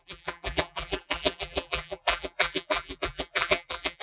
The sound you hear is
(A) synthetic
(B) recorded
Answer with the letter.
A